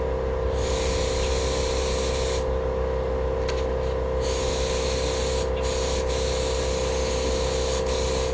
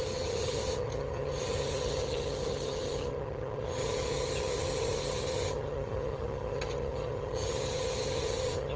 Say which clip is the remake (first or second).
second